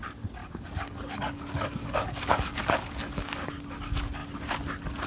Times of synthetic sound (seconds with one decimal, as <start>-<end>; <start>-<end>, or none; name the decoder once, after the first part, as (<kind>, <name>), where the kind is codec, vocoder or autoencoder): 0.4-3.5 (codec, DAC)